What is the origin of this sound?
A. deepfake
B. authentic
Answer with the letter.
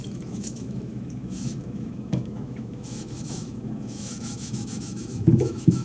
A